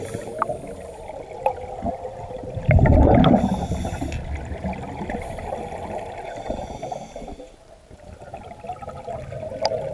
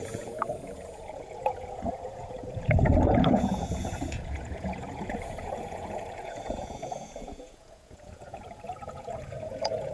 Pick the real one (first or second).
first